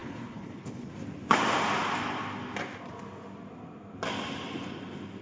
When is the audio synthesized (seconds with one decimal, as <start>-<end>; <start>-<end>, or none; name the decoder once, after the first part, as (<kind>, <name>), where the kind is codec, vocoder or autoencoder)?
0.0-0.9 (codec, HILCodec)